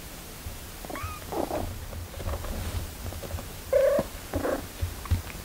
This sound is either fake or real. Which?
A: real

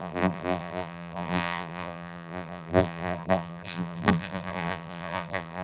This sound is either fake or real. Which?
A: fake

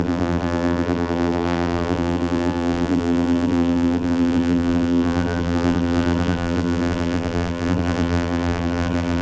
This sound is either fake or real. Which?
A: fake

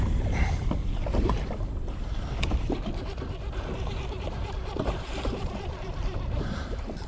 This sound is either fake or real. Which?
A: fake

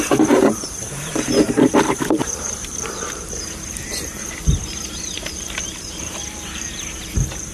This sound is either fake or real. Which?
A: fake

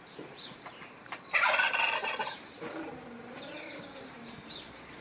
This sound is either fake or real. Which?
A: fake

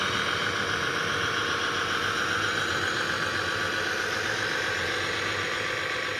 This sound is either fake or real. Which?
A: real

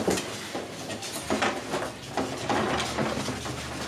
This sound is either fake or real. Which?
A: real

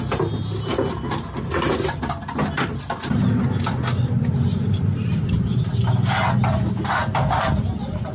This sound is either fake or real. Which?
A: real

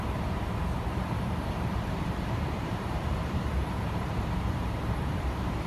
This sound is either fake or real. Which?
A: fake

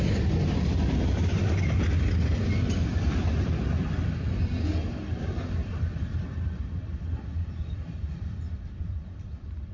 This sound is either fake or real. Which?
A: fake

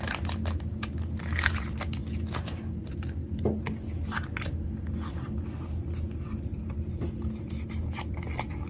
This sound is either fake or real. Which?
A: real